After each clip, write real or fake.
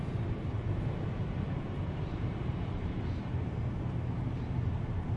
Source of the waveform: fake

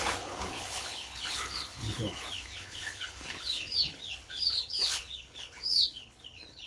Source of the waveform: fake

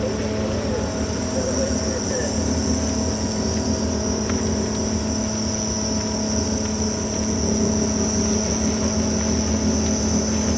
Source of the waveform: real